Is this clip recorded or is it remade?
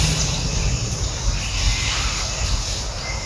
recorded